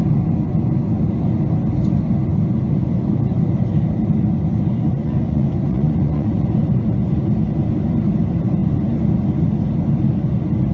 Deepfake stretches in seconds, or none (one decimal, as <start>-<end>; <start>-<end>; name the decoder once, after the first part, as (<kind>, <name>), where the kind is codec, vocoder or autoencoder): 5.0-6.5 (vocoder, Vocos)